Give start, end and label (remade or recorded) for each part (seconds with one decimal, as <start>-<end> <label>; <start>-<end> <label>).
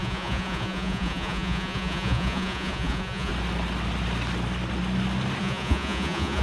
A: 0.0-3.3 remade; 3.3-5.4 recorded; 5.4-6.4 remade